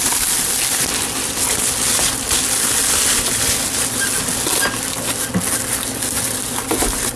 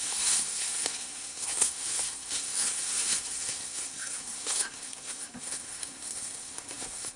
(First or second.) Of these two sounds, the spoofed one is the second